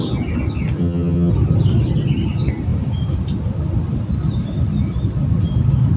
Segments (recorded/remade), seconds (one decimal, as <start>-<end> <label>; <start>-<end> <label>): 0.0-0.8 recorded; 0.8-1.3 remade; 1.3-6.0 recorded